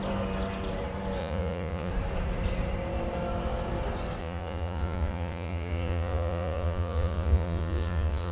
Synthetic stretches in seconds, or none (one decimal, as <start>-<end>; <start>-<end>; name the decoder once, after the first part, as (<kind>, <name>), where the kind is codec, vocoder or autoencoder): 1.2-1.9 (vocoder, Vocos); 4.2-8.3